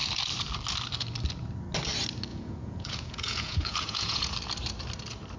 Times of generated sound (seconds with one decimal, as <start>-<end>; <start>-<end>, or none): 2.3-4.3